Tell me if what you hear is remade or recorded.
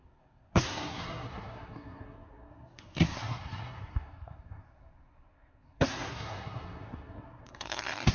remade